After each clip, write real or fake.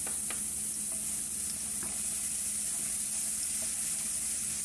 real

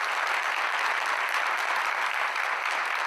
real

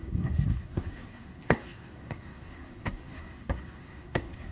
fake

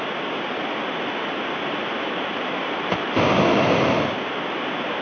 real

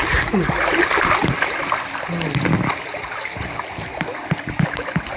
real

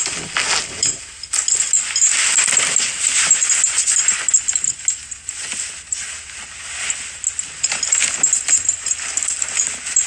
real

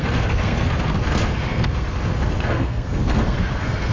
fake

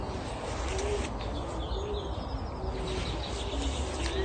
real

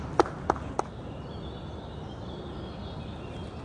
real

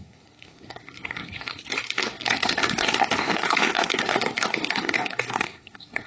fake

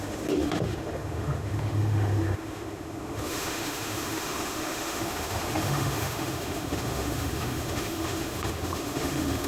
fake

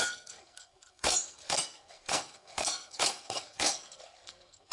fake